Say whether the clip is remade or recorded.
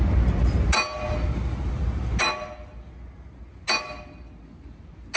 recorded